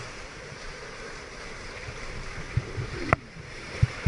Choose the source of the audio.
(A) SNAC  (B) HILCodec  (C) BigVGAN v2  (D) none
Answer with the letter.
C